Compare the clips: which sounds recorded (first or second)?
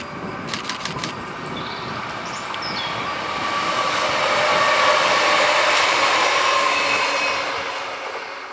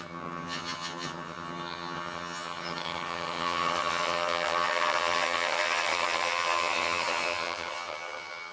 first